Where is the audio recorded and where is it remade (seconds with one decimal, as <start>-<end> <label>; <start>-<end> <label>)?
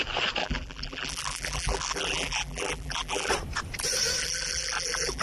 0.0-0.4 recorded; 0.4-3.3 remade; 3.3-4.2 recorded; 4.2-5.2 remade